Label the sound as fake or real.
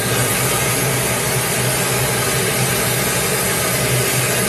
real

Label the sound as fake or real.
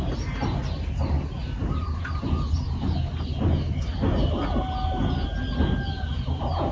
real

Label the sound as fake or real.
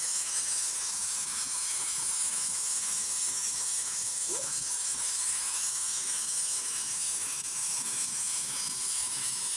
fake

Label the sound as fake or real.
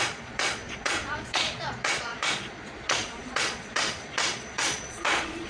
fake